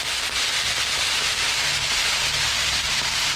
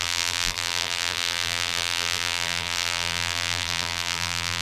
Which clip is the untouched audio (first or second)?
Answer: first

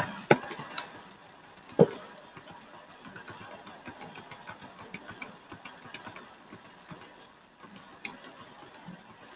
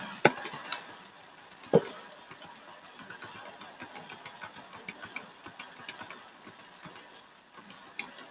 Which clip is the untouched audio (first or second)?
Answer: second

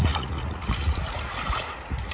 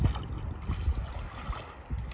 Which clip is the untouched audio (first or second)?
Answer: second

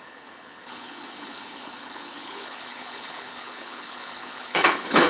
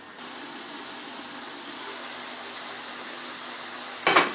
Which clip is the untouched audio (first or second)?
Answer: second